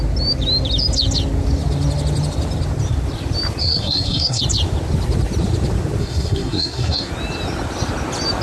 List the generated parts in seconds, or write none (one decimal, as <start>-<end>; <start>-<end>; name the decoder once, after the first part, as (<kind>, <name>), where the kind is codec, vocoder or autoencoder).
3.6-4.4 (codec, SNAC); 6.0-7.1